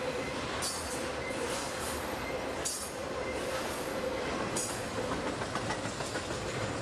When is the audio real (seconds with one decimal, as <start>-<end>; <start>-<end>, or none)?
0.0-6.8